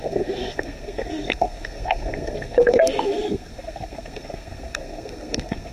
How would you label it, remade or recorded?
remade